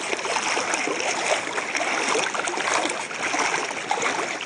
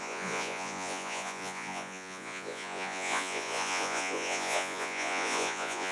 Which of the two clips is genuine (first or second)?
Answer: first